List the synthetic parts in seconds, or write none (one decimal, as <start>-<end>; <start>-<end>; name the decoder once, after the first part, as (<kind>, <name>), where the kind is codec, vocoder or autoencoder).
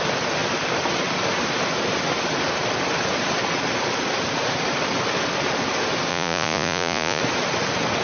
6.1-7.2 (vocoder, Vocos)